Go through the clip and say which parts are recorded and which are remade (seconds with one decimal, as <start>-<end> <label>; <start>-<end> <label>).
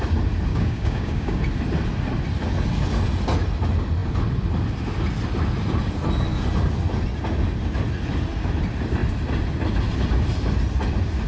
0.0-0.5 recorded; 0.5-1.4 remade; 1.4-11.3 recorded